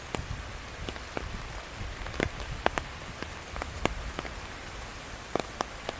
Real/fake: fake